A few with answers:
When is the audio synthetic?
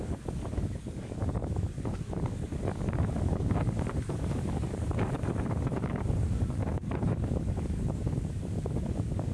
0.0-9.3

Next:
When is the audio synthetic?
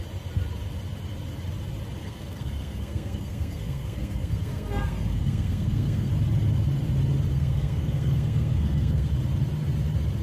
2.0-6.1; 7.3-9.1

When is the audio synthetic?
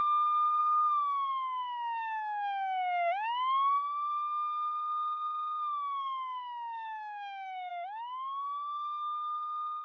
0.0-9.8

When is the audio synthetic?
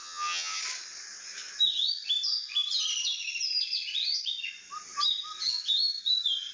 0.0-0.6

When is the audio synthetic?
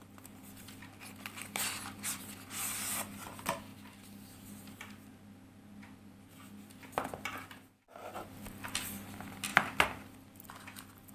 9.5-11.1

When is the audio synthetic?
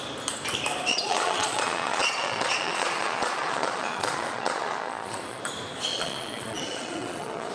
0.9-5.4; 5.9-7.5